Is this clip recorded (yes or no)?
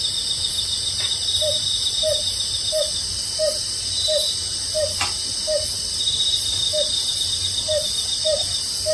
yes